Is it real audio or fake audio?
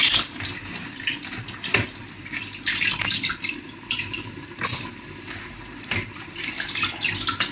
real